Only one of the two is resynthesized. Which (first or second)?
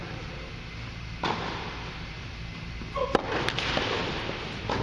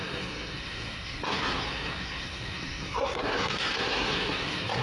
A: second